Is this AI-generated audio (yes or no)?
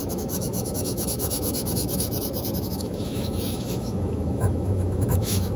yes